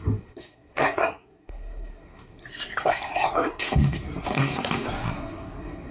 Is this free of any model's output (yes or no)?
no